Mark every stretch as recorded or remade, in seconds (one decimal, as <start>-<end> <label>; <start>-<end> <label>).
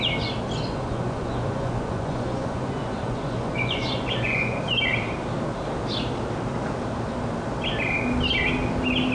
0.0-0.7 recorded; 0.7-4.6 remade; 4.6-9.1 recorded